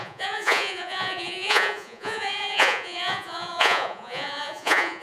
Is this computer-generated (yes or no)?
yes